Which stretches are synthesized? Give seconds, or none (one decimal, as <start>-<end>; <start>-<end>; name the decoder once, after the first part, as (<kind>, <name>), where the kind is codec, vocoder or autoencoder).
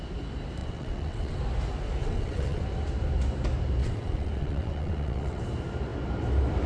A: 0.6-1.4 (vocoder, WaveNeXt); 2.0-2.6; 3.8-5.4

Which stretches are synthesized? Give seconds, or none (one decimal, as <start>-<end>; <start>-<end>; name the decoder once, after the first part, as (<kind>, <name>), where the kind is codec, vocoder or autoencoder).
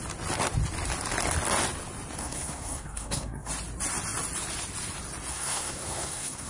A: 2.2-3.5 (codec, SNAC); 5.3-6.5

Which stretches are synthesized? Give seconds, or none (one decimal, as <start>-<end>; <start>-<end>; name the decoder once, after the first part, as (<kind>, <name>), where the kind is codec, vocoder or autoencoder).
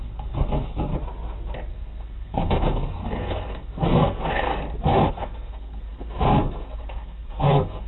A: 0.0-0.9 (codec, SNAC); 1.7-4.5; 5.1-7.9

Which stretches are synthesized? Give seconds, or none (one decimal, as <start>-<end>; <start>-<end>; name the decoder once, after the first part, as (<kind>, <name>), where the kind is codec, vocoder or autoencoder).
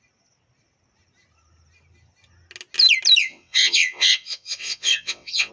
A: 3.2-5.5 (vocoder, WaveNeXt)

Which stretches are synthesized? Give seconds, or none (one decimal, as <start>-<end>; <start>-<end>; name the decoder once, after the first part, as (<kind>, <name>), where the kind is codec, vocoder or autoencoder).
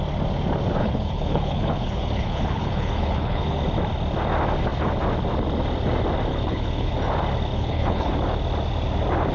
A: 0.8-3.6 (codec, HILCodec); 6.3-6.9; 7.5-8.1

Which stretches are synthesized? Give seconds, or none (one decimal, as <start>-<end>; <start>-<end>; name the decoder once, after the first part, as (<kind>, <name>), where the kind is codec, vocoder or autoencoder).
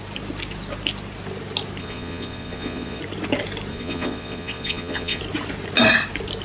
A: 1.8-3.0 (vocoder, Vocos); 3.7-5.2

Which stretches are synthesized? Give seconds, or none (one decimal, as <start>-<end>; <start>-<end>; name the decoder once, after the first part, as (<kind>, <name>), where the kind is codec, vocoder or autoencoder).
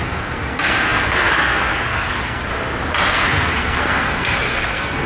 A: 0.0-2.5 (codec, SNAC); 3.1-5.1